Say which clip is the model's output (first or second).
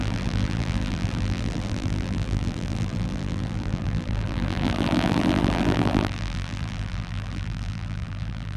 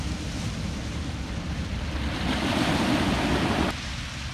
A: first